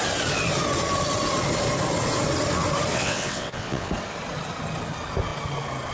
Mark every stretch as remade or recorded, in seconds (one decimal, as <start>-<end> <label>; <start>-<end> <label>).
0.0-2.9 recorded; 2.9-3.9 remade; 3.9-5.9 recorded